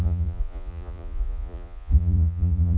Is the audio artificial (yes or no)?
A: yes